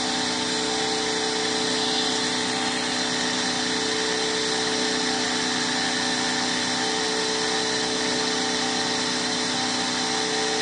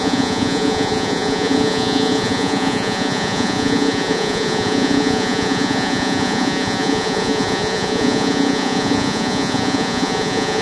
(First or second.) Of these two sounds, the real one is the first